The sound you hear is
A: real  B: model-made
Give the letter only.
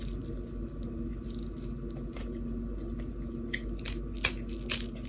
A